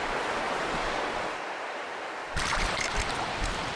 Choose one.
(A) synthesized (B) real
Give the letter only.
A